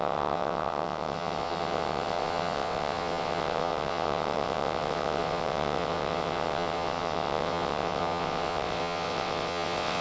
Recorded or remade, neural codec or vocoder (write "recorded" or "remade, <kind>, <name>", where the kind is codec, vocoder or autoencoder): remade, vocoder, WaveNeXt